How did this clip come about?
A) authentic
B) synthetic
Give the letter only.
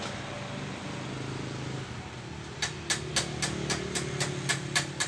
A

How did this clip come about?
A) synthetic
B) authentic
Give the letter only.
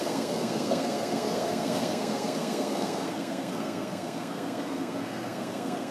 A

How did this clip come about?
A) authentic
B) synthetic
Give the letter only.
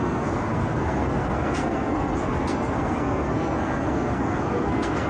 B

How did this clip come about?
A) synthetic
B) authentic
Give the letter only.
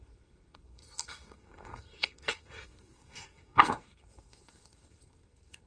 A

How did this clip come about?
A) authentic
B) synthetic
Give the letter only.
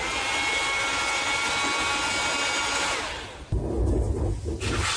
A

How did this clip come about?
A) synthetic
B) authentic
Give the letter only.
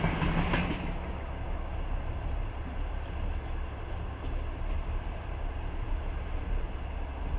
B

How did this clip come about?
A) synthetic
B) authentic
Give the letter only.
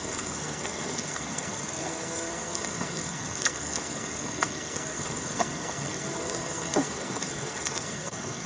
A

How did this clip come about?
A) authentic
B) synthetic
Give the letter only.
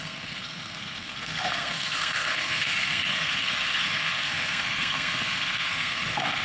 B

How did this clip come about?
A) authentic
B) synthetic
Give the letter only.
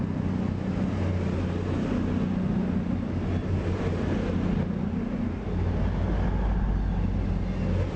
A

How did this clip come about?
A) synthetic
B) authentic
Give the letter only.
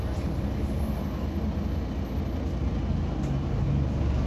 B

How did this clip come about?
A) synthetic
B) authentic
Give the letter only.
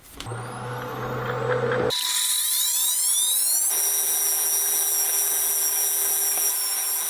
B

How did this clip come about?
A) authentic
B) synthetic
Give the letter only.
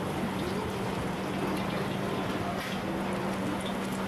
A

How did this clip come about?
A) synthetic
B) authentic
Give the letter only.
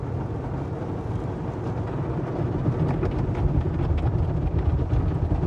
B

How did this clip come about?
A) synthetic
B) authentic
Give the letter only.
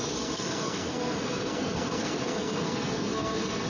A